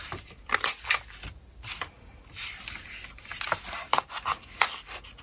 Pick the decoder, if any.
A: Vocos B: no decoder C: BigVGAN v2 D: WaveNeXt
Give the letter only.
B